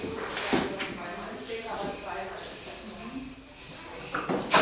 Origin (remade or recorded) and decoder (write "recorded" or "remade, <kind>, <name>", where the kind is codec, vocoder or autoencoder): recorded